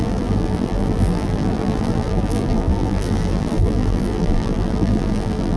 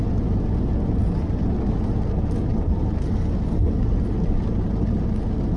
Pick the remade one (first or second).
first